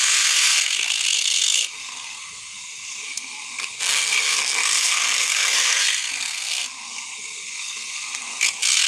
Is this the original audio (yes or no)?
no